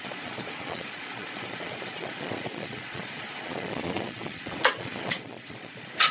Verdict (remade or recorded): remade